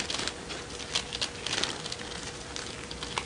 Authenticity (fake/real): real